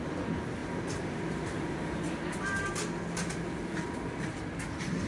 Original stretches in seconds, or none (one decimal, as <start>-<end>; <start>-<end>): 0.0-5.1